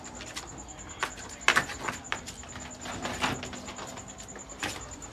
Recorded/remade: recorded